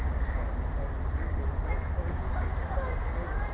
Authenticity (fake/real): real